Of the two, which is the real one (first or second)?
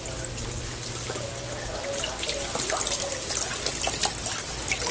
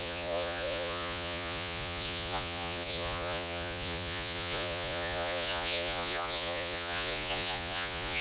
first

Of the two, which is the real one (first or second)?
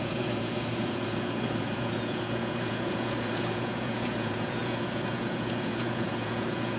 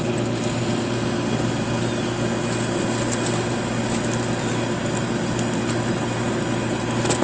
second